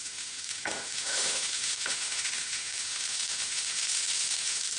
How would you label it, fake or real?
fake